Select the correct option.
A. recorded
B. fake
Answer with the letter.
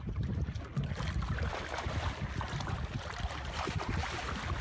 A